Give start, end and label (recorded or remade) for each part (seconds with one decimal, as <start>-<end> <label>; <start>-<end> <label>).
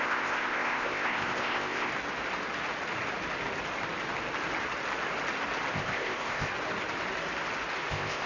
0.0-1.9 remade; 1.9-5.7 recorded; 5.7-6.5 remade; 6.5-7.9 recorded; 7.9-8.3 remade